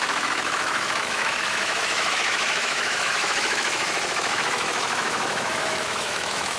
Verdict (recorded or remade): remade